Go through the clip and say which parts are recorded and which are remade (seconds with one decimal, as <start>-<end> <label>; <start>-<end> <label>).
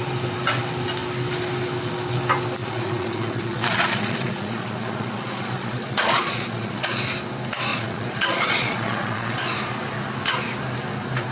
0.0-2.6 recorded; 2.6-7.0 remade; 7.0-7.7 recorded; 7.7-9.4 remade; 9.4-11.3 recorded